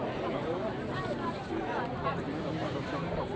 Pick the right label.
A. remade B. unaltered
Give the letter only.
A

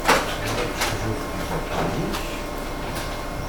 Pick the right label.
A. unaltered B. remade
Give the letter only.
A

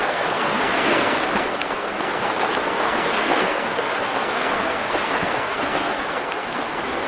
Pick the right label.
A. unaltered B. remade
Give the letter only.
B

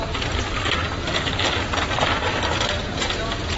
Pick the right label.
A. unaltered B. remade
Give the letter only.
A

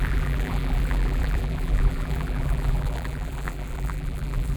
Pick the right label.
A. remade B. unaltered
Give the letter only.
A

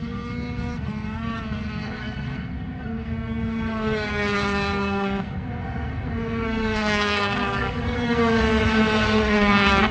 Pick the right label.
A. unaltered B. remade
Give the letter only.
B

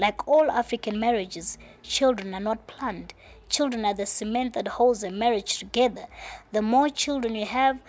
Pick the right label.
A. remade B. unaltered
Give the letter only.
B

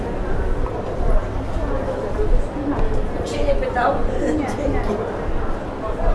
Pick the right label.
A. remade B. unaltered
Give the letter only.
B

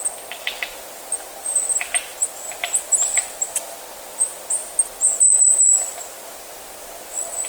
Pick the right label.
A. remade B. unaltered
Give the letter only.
B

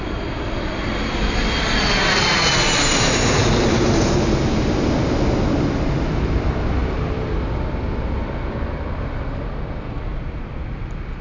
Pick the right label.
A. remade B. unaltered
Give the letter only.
B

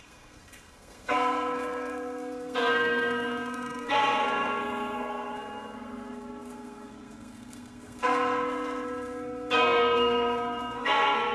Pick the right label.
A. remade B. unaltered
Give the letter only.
A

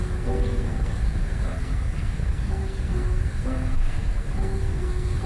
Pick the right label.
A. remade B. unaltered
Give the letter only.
A